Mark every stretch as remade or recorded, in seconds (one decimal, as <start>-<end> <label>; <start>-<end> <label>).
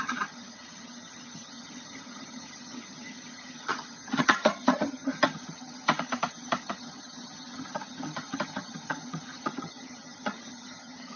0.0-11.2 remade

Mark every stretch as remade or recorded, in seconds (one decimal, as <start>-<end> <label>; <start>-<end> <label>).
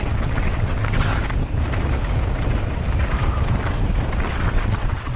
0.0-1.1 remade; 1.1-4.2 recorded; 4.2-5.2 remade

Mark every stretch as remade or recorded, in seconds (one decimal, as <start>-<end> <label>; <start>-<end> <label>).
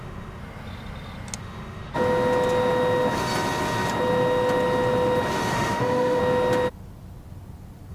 0.0-0.4 remade; 0.4-1.4 recorded; 1.4-1.9 remade; 1.9-5.5 recorded; 5.5-6.2 remade; 6.2-7.9 recorded